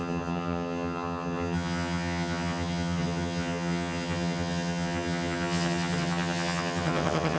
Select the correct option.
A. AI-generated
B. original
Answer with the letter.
A